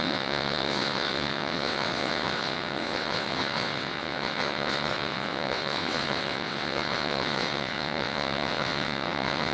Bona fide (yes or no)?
no